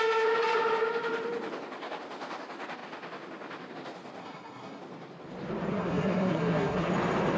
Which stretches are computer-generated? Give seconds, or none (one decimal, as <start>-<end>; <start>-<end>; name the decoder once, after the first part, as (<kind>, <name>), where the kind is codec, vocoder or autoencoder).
4.2-4.8 (codec, SNAC); 5.7-6.9